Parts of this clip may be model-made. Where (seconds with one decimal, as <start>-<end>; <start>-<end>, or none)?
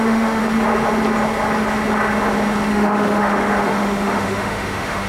0.0-0.4; 2.7-5.1